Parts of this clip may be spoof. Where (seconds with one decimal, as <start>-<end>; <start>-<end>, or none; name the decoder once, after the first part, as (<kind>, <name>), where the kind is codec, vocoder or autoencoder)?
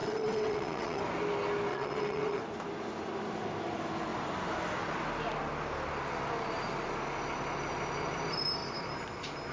0.0-1.0 (vocoder, WaveNeXt); 1.7-2.4